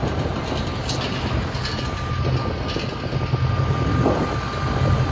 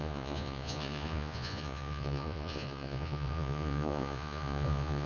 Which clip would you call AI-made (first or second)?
second